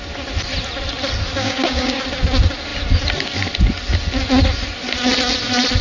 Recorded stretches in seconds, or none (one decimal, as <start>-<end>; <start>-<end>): 0.0-1.4; 2.0-5.8